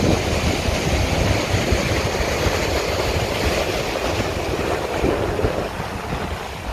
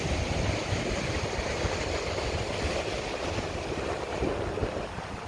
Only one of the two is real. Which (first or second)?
first